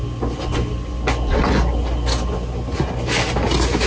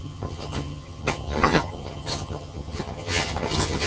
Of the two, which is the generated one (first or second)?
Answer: second